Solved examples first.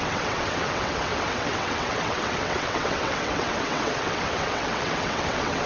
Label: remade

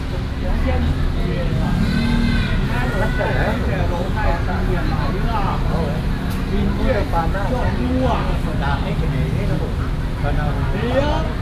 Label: recorded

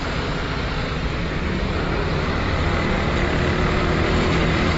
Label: recorded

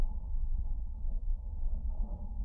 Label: remade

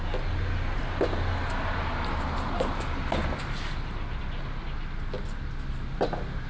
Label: recorded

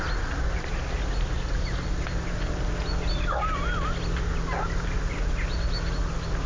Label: recorded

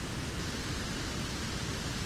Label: recorded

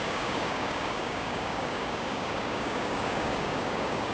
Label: remade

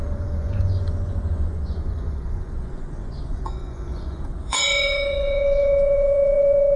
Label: remade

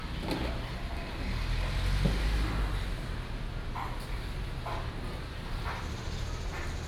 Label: recorded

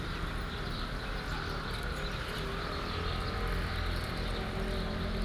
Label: recorded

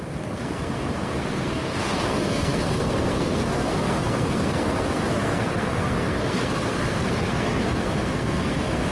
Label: remade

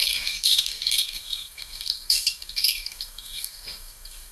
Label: remade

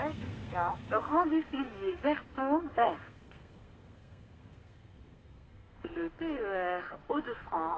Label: remade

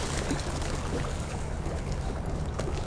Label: remade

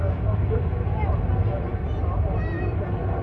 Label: recorded